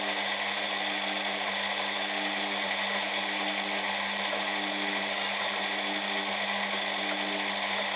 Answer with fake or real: real